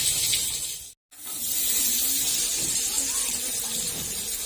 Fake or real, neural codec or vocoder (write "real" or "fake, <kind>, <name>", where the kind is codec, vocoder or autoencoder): real